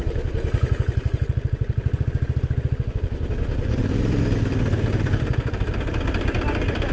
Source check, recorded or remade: recorded